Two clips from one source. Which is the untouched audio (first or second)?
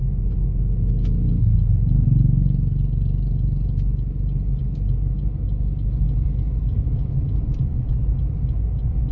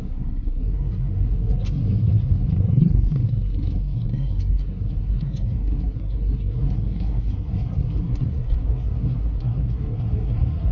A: first